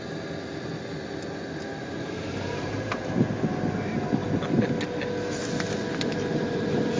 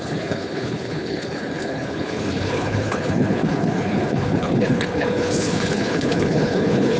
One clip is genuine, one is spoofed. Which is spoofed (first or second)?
second